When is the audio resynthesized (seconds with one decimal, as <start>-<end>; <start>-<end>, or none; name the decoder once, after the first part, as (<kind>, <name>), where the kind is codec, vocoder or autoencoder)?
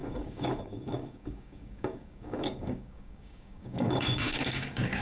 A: 0.0-5.0 (codec, DAC)